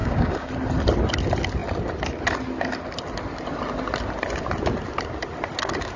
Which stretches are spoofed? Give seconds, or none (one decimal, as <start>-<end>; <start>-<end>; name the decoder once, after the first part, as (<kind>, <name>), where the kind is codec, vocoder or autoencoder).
0.0-0.5 (codec, DAC)

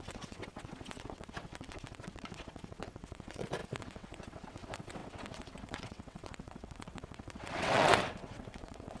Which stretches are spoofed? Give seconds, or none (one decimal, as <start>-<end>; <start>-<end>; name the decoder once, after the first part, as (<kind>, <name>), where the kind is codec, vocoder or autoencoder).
0.0-9.0 (vocoder, WaveNeXt)